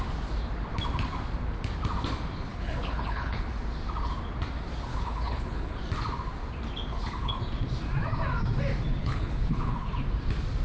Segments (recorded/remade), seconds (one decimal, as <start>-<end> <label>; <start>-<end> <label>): 0.0-2.5 recorded; 2.5-3.5 remade; 3.5-4.9 recorded; 4.9-5.8 remade; 5.8-6.9 recorded; 6.9-7.4 remade; 7.4-9.0 recorded; 9.0-9.9 remade; 9.9-10.6 recorded